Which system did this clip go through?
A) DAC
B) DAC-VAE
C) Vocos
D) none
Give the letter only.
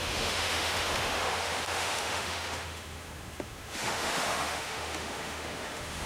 B